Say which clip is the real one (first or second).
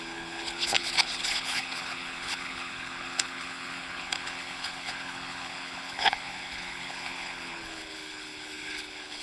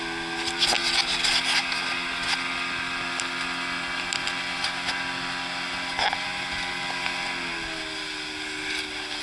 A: second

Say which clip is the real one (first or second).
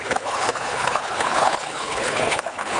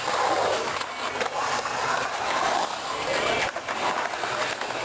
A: second